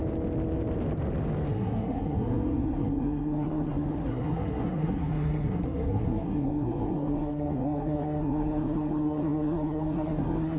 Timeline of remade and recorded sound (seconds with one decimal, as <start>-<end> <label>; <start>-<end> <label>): 0.0-1.5 recorded; 1.5-10.6 remade